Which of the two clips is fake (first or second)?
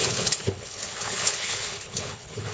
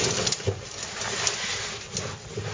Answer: first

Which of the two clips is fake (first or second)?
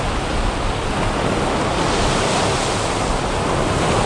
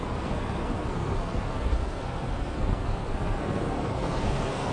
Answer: second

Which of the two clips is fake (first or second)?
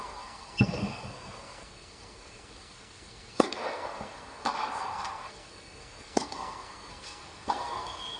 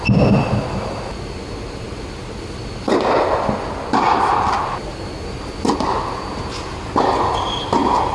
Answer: first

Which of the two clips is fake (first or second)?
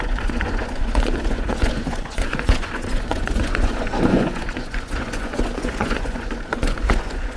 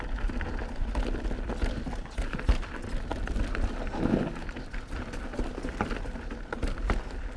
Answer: first